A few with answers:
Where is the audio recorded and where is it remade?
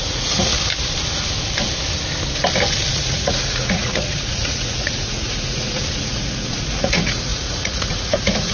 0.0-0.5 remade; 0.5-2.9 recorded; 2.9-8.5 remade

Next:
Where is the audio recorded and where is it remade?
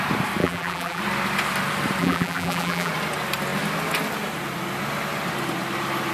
0.0-0.4 recorded; 0.4-1.0 remade; 1.0-2.0 recorded; 2.0-2.9 remade; 2.9-6.1 recorded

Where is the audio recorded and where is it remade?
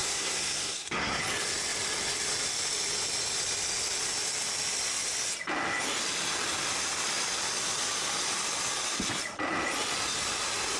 0.0-1.2 remade; 1.2-10.8 recorded